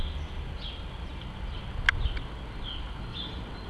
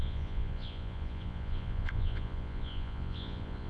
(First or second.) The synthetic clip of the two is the second